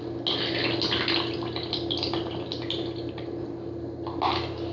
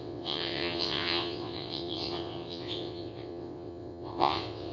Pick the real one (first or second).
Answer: first